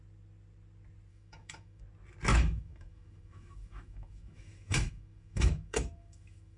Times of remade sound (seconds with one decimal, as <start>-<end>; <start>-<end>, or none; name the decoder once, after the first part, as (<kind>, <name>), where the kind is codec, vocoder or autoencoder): 1.1-1.8 (autoencoder, DAC-VAE); 2.3-6.6